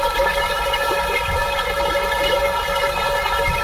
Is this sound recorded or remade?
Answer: remade